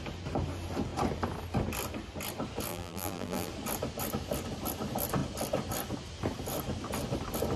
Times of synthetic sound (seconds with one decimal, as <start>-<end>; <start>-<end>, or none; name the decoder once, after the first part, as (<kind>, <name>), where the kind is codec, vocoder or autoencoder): 2.7-3.5 (vocoder, BigVGAN v2)